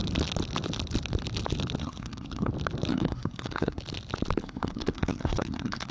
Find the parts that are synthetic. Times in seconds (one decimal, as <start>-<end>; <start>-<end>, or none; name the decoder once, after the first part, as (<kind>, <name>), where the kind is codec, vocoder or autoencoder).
1.8-2.5 (codec, SNAC); 2.9-3.8; 4.4-5.9